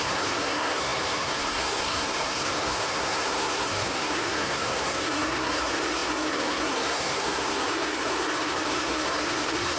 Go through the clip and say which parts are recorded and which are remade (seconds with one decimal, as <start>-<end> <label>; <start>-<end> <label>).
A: 0.0-9.8 remade